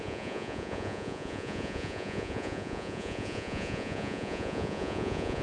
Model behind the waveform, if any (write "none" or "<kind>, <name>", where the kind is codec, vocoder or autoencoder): vocoder, Vocos